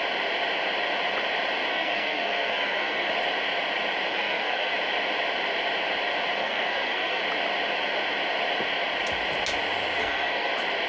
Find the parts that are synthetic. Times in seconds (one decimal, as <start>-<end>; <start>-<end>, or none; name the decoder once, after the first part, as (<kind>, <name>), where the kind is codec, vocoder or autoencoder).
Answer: 1.7-3.1 (codec, SNAC); 4.1-4.7; 6.4-7.2; 10.0-10.5